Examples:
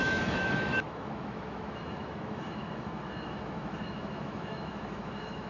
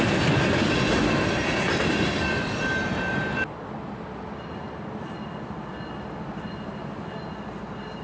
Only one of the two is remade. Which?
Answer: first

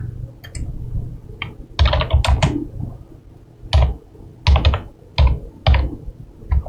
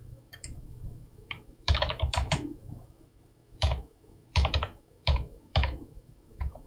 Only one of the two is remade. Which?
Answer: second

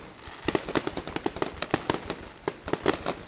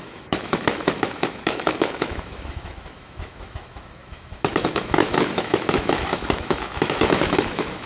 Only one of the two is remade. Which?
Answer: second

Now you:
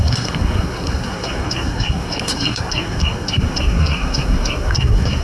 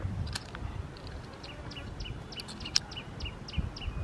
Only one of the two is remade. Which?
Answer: first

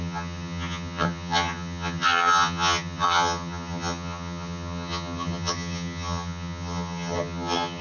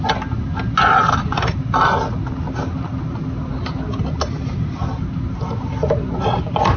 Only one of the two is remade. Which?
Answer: first